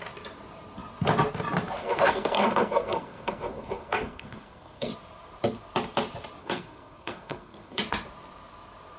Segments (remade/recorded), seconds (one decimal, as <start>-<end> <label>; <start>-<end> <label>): 0.0-1.8 recorded; 1.8-4.9 remade; 4.9-6.4 recorded; 6.4-7.8 remade; 7.8-9.0 recorded